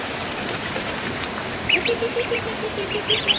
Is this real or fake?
fake